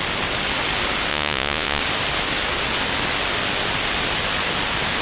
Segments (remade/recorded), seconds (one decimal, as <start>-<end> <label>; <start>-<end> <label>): 0.0-1.1 recorded; 1.1-1.8 remade; 1.8-5.0 recorded

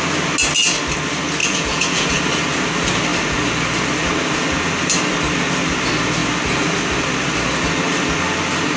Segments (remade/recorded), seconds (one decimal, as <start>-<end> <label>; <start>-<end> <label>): 0.0-1.4 recorded; 1.4-2.1 remade; 2.1-8.8 recorded

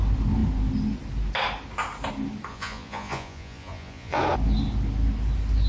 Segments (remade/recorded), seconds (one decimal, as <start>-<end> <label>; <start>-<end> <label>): 0.0-2.5 recorded; 2.5-4.2 remade; 4.2-5.7 recorded

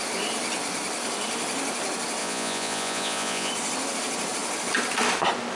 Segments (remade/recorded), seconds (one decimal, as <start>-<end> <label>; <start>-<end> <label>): 0.0-2.2 recorded; 2.2-3.5 remade; 3.5-5.6 recorded

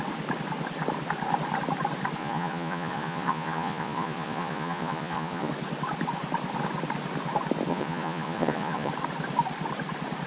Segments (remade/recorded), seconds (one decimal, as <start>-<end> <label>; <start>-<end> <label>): 0.0-2.2 recorded; 2.2-5.5 remade; 5.5-7.7 recorded; 7.7-8.9 remade; 8.9-10.3 recorded

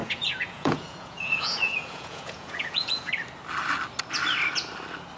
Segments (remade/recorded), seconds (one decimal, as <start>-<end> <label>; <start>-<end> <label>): 0.0-3.1 remade; 3.1-5.2 recorded